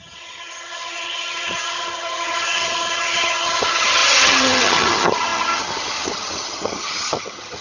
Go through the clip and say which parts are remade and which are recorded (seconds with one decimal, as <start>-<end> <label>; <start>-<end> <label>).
0.0-7.6 remade